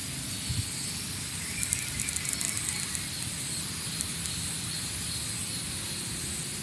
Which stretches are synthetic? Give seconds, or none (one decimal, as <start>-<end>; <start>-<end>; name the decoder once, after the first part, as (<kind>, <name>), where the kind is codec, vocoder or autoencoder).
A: none